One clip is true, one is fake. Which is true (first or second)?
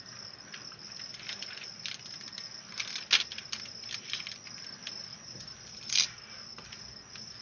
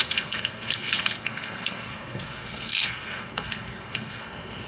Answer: first